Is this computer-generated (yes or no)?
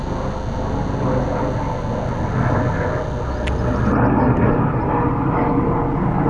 no